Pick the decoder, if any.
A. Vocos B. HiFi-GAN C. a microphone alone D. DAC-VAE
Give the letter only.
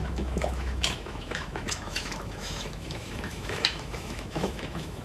D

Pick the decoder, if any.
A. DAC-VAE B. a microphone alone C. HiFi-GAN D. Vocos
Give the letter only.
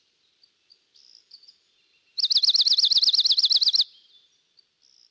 B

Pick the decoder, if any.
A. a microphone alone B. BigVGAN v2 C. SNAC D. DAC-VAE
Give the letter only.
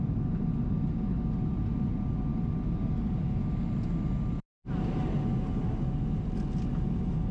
A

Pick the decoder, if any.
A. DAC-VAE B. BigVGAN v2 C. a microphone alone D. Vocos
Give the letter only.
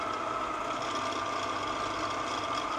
C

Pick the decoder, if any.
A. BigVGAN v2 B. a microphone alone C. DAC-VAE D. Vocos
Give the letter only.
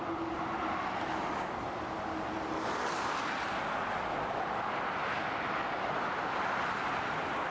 B